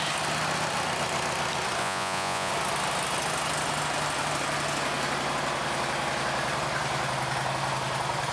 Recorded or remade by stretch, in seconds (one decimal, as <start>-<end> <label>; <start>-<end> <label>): 0.0-1.8 recorded; 1.8-2.5 remade; 2.5-8.3 recorded